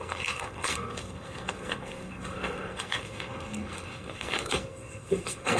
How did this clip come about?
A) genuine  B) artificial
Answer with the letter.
B